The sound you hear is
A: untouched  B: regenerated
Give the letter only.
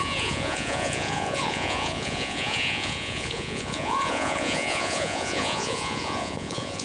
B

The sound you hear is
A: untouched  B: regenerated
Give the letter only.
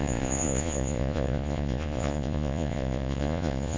B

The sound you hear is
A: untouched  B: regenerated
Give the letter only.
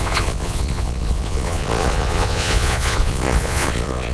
B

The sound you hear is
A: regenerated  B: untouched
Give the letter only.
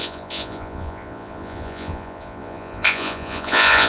A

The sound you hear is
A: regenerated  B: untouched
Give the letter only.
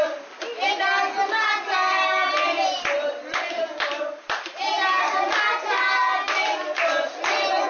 B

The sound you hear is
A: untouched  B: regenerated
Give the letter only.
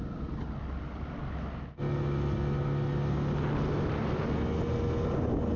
A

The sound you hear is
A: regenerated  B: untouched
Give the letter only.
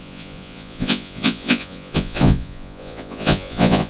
A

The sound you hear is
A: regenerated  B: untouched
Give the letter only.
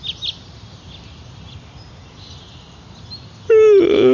B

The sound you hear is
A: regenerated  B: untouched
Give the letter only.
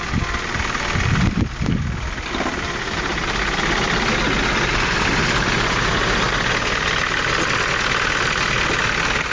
B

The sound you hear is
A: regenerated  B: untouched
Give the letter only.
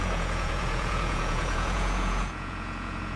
A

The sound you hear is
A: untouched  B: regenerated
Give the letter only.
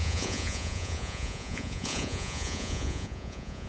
B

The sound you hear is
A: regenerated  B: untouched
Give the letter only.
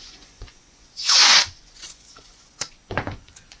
A